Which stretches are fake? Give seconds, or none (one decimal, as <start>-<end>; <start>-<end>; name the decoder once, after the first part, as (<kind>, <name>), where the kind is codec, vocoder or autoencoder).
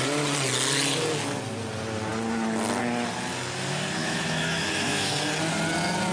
4.0-5.1 (autoencoder, DAC-VAE)